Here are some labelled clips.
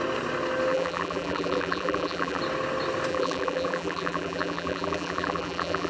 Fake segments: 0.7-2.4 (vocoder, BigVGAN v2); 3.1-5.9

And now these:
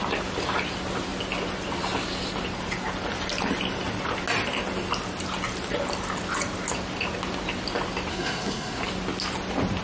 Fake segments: 8.1-8.8 (codec, SNAC)

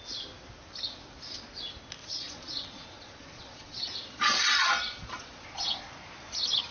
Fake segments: 2.0-5.8 (vocoder, Vocos)

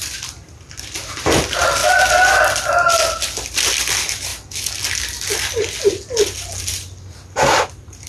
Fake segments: none

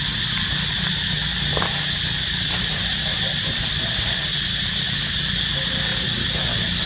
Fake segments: 0.0-1.2 (vocoder, BigVGAN v2); 2.6-5.9

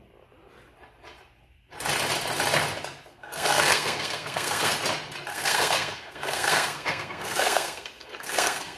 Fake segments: 3.1-4.7 (codec, SNAC); 5.3-8.8

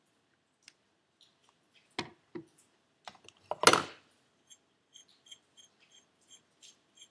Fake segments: none